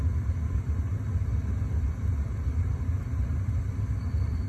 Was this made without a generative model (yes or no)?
yes